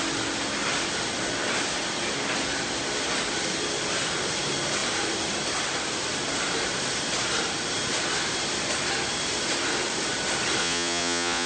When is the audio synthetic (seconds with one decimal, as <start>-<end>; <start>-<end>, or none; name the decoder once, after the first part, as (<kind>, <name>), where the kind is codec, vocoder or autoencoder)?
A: 10.6-11.5 (vocoder, Vocos)